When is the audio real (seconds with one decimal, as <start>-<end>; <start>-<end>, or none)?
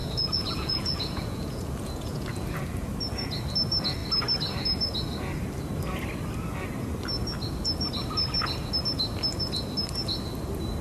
2.6-10.8